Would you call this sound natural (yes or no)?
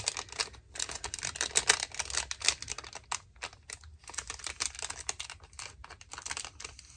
yes